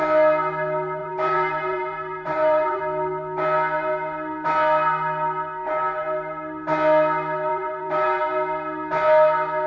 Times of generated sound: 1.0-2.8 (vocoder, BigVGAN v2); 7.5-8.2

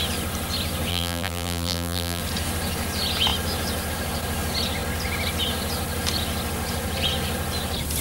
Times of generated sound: 0.9-2.2 (vocoder, BigVGAN v2)

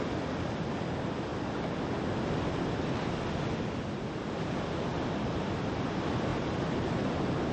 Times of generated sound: 6.3-7.1 (vocoder, BigVGAN v2)